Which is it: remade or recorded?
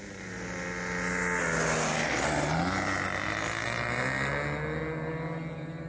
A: recorded